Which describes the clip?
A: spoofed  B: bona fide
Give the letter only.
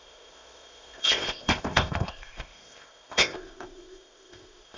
A